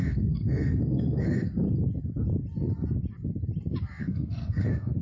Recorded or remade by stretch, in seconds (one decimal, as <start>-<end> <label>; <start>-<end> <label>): 0.0-1.5 remade; 1.5-4.0 recorded; 4.0-5.0 remade